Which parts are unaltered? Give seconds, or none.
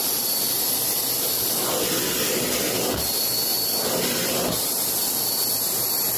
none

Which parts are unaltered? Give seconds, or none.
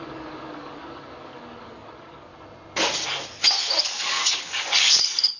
2.3-3.8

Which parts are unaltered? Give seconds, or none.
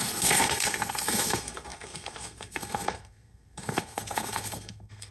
none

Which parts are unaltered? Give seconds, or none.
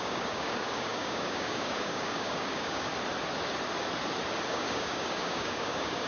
2.9-4.5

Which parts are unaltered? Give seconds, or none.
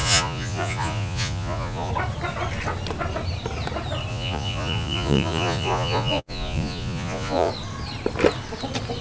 1.9-4.1; 7.5-9.0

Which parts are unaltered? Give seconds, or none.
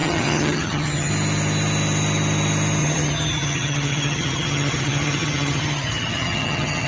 1.1-2.8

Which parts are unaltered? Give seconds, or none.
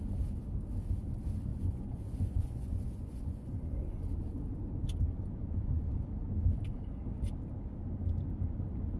0.0-1.5; 4.0-5.2; 5.8-9.0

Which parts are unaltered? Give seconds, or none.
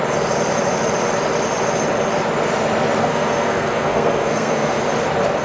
0.0-3.0; 4.8-5.4